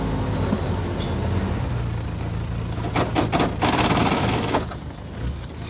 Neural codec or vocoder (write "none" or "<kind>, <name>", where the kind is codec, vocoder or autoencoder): none